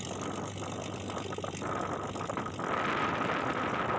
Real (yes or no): yes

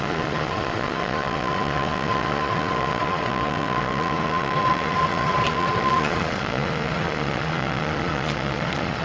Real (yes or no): no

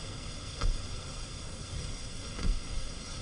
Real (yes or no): no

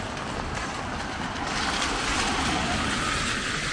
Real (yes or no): yes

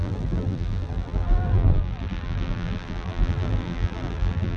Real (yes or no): no